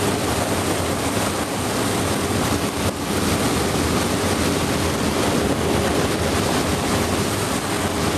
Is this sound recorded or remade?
recorded